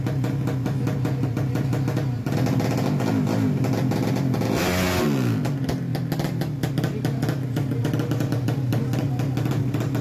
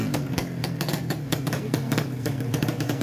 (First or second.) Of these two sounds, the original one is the first